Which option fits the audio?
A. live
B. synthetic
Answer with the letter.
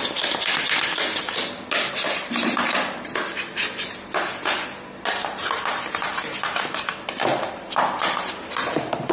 B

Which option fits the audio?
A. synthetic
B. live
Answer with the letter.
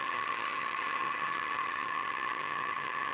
A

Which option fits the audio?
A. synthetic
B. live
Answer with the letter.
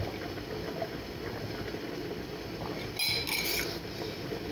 B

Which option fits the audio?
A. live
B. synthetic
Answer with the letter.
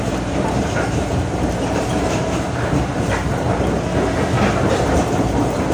B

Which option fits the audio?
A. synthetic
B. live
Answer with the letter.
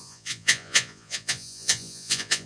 A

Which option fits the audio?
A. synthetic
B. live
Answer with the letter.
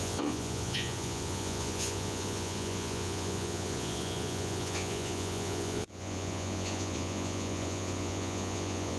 A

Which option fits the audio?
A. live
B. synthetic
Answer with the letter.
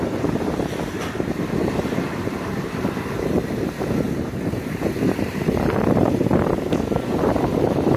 B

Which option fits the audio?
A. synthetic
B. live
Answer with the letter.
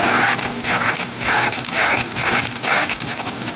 A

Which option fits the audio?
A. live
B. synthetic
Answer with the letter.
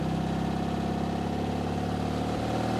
A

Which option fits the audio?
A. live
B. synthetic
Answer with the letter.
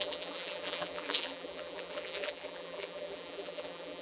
B